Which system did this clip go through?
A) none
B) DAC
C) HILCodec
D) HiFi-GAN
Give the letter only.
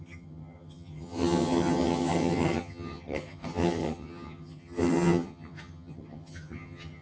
D